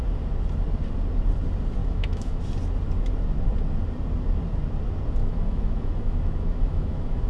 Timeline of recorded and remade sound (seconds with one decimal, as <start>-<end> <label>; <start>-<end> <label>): 0.0-1.8 recorded; 1.8-2.4 remade; 2.4-5.2 recorded; 5.2-7.3 remade